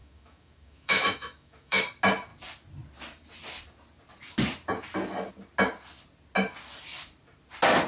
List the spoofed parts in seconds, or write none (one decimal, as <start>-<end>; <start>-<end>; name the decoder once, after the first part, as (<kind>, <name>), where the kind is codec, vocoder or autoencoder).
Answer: 0.0-1.8 (autoencoder, DAC-VAE)

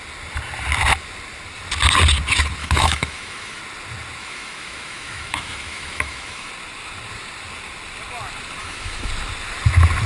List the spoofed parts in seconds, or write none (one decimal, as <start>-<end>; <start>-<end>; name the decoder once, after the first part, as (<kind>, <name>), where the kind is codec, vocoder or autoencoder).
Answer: 2.6-3.6 (autoencoder, DAC-VAE); 4.2-6.5; 8.6-9.1

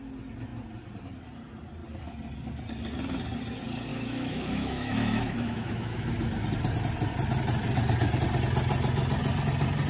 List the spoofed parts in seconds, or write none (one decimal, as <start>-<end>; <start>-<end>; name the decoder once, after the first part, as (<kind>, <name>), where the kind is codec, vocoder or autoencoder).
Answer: 3.9-6.1 (autoencoder, DAC-VAE)

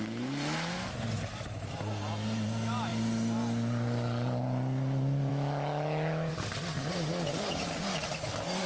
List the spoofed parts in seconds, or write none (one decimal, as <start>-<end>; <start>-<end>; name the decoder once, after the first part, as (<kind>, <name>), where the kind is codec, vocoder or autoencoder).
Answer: 5.3-6.3 (autoencoder, DAC-VAE)

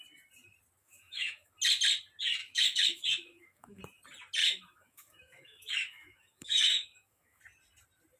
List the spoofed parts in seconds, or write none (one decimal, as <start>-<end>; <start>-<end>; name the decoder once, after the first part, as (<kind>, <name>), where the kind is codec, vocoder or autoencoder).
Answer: 0.8-1.5 (autoencoder, DAC-VAE); 2.4-3.8; 4.4-7.4

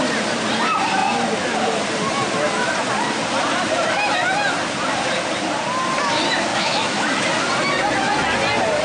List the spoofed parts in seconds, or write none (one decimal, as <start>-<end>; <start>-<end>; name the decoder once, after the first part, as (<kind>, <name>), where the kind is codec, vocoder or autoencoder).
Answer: 6.5-7.3 (autoencoder, DAC-VAE)